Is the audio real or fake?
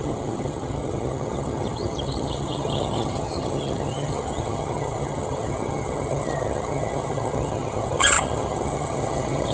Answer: fake